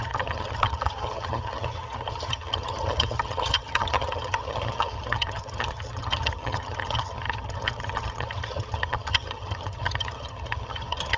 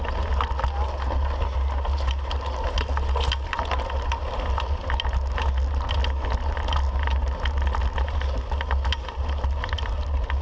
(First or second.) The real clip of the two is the second